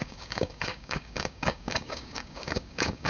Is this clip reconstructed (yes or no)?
yes